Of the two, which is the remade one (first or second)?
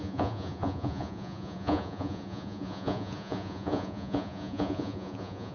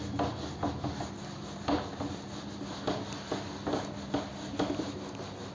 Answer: first